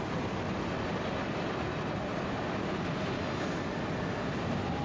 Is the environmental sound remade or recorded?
recorded